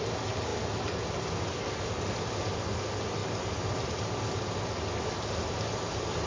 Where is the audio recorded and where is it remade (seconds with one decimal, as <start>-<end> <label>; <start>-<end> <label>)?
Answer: 0.0-3.2 recorded; 3.2-4.1 remade; 4.1-6.3 recorded